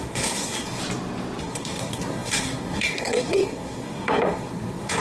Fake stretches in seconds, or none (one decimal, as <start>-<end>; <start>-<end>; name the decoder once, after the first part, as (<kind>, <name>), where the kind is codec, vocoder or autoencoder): 0.0-0.8 (codec, SNAC); 1.4-5.0